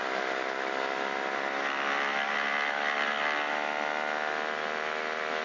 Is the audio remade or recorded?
recorded